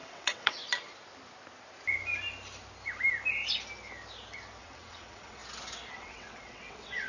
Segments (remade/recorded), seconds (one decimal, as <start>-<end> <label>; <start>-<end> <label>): 0.0-0.6 remade; 0.6-4.6 recorded; 4.6-5.4 remade; 5.4-5.9 recorded; 5.9-7.1 remade